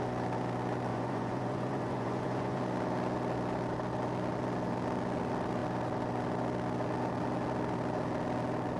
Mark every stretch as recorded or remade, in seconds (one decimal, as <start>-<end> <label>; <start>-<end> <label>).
0.0-0.9 recorded; 0.9-2.6 remade; 2.6-8.8 recorded

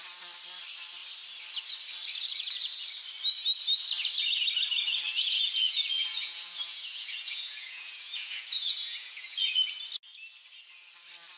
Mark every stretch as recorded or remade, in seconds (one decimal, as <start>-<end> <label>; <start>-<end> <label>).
0.0-5.2 recorded; 5.2-9.6 remade; 9.6-11.4 recorded